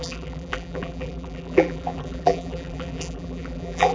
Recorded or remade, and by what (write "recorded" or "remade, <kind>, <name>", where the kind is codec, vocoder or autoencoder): remade, vocoder, BigVGAN v2